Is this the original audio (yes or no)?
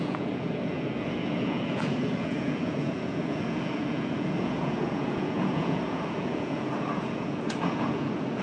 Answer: no